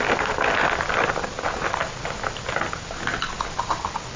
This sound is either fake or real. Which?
real